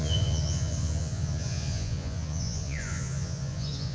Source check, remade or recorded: remade